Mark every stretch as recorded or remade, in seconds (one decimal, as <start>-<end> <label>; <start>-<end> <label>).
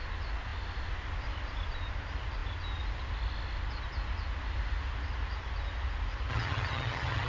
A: 0.0-6.3 recorded; 6.3-7.3 remade